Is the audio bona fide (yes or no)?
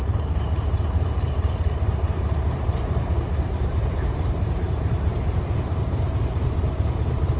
no